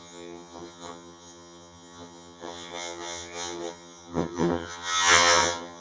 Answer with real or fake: fake